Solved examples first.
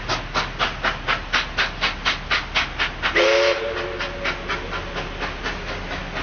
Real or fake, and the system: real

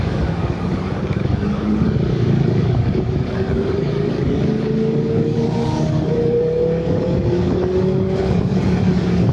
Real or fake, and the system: fake, codec, DAC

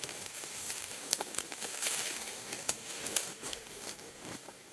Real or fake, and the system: fake, codec, DAC